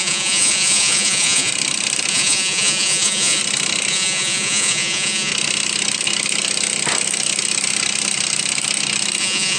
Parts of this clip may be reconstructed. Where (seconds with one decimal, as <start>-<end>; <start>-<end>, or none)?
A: 0.0-1.5; 2.1-3.4; 3.9-5.3; 9.2-9.6